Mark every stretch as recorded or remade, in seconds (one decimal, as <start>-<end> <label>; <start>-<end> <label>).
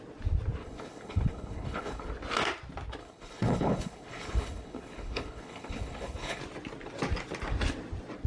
0.0-0.6 recorded; 0.6-2.1 remade; 2.1-3.0 recorded; 3.0-6.4 remade; 6.4-8.3 recorded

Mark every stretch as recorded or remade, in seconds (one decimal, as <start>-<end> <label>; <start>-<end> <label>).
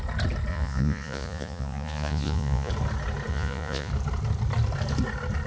0.0-0.5 recorded; 0.5-2.7 remade; 2.7-3.3 recorded; 3.3-3.9 remade; 3.9-5.5 recorded